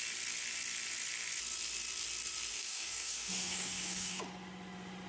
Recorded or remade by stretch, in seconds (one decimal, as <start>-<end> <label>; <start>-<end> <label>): 0.0-2.5 recorded; 2.5-4.2 remade; 4.2-5.1 recorded